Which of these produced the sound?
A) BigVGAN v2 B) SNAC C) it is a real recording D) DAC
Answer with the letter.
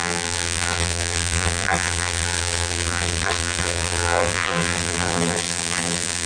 A